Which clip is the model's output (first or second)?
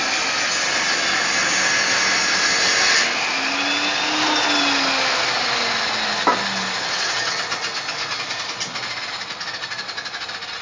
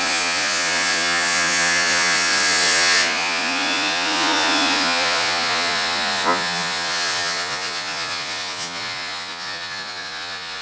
second